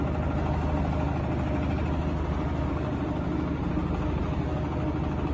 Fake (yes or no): no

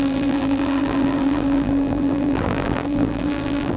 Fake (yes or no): yes